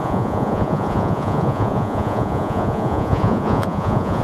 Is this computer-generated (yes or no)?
yes